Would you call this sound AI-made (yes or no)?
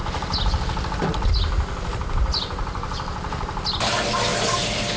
no